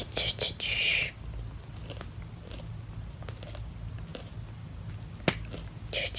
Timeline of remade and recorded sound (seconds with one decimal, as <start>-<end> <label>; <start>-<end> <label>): 0.0-6.2 recorded